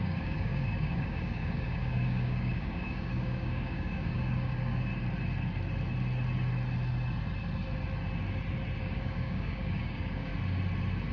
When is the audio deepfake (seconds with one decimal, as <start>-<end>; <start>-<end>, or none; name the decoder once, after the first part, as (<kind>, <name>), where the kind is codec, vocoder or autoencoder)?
0.0-4.9 (codec, DAC); 8.8-10.3